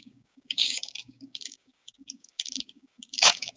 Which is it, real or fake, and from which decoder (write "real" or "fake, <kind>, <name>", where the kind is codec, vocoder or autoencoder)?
fake, codec, DAC